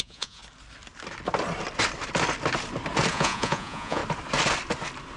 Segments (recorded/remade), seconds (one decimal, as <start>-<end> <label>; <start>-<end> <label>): 0.0-0.4 remade; 0.4-3.1 recorded; 3.1-4.0 remade; 4.0-5.2 recorded